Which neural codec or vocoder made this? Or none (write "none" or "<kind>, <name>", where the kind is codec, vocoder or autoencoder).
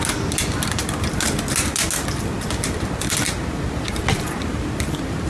none